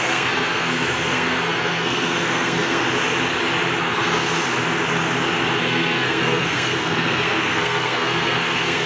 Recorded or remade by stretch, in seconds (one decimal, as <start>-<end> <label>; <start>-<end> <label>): 0.0-2.8 remade; 2.8-3.8 recorded; 3.8-4.2 remade; 4.2-5.6 recorded; 5.6-8.9 remade